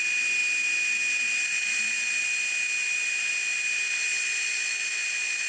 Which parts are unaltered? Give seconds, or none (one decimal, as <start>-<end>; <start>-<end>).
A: 0.0-5.5